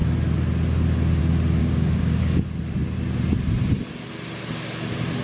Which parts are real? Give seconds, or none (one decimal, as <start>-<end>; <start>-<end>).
0.0-1.6; 2.2-5.2